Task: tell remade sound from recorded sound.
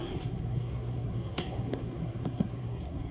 remade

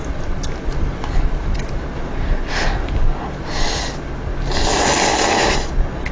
recorded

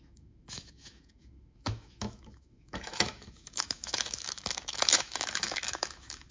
remade